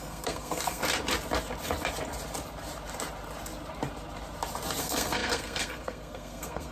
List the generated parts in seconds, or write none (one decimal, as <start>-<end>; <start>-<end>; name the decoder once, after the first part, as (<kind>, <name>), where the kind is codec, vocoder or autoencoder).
0.0-0.8 (codec, SNAC); 4.8-6.7